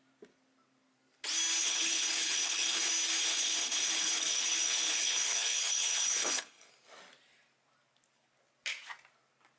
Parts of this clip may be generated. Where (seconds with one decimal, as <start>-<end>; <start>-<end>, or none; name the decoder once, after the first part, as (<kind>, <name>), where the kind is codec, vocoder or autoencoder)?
1.6-2.9 (codec, HILCodec); 3.3-6.7

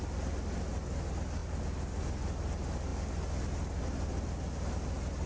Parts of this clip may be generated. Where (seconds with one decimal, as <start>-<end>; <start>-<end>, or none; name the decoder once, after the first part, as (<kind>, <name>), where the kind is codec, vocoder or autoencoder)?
none

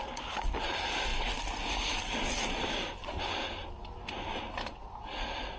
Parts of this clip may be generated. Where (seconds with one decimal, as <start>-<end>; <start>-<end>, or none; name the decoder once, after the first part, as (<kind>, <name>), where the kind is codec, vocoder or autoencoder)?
none

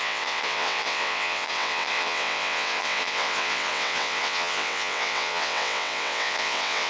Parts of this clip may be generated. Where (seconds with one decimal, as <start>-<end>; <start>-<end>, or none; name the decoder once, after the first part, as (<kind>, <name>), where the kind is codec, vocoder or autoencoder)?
0.0-6.9 (vocoder, WaveNeXt)

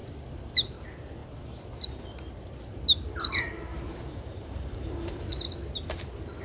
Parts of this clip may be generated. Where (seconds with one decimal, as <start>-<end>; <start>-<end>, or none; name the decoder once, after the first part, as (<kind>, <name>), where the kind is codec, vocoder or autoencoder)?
3.7-5.3 (vocoder, BigVGAN v2)

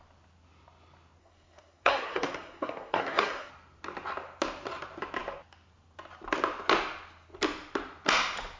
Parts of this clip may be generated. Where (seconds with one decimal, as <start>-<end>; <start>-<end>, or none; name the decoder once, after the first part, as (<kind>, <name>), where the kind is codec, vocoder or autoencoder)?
1.2-3.5 (codec, SNAC)